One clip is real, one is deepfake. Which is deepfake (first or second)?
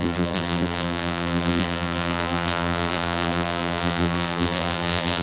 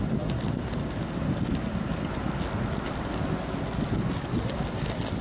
first